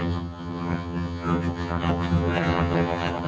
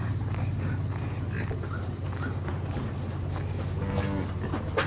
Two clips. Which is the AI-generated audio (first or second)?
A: first